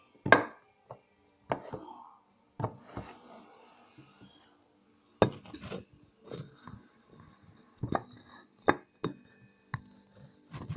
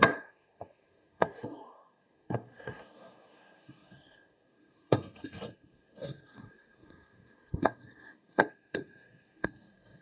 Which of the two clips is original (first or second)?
first